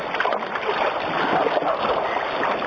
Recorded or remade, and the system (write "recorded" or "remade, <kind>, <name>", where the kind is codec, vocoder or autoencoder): recorded